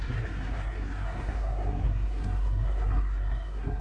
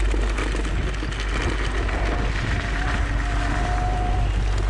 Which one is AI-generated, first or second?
first